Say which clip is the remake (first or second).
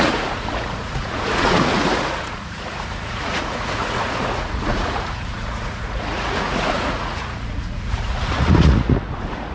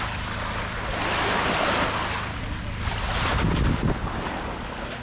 first